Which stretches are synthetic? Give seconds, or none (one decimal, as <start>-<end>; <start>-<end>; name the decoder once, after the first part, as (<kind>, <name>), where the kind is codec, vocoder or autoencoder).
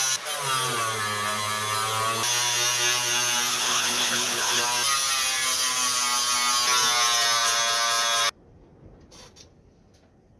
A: 3.5-4.6 (codec, HILCodec)